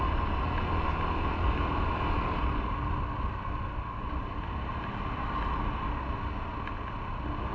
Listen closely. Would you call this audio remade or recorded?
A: recorded